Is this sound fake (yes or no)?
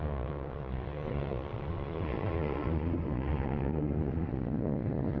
yes